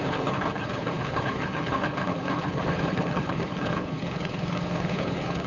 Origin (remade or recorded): remade